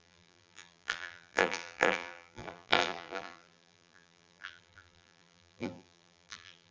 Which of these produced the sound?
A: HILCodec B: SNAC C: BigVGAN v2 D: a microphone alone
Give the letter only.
C